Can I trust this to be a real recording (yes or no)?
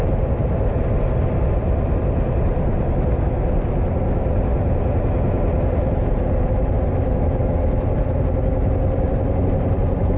yes